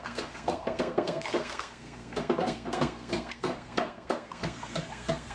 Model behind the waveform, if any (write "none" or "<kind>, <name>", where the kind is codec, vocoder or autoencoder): codec, SNAC